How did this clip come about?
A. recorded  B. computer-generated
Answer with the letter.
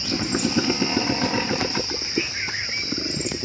A